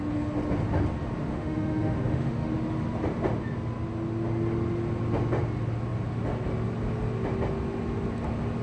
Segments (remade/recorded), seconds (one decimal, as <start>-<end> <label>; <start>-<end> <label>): 0.0-1.3 recorded; 1.3-2.5 remade; 2.5-8.6 recorded